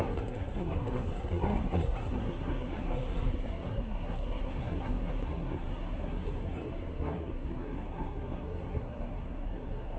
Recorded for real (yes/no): no